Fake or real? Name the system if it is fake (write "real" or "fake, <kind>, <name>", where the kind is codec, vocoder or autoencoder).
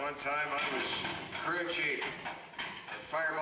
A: real